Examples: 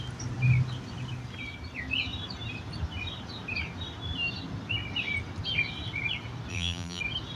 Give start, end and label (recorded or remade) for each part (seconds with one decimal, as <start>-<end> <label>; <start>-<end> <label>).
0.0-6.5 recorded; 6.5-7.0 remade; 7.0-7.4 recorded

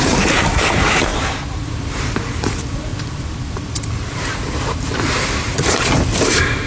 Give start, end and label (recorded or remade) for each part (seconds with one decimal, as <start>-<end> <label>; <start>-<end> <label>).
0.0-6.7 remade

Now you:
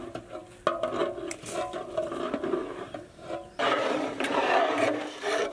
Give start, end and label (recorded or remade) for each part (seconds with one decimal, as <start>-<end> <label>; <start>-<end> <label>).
0.0-2.6 recorded; 2.6-4.6 remade; 4.6-5.5 recorded